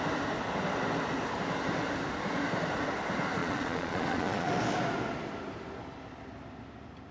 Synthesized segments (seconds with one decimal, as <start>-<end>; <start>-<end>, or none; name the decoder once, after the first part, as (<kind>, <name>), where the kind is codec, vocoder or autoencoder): 3.4-4.5 (vocoder, Vocos)